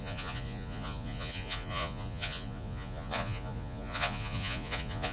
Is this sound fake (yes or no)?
yes